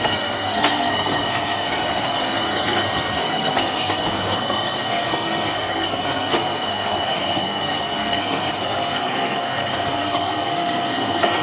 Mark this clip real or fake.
fake